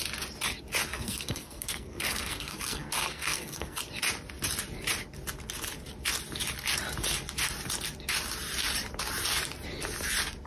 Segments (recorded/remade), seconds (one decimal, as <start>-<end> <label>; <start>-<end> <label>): 0.0-0.9 recorded; 0.9-3.8 remade; 3.8-10.5 recorded